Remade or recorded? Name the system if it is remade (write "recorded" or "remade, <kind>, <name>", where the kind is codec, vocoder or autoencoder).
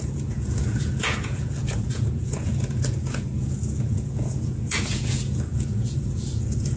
remade, vocoder, Vocos